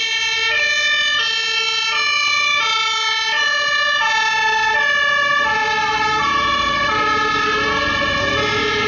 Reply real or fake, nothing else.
real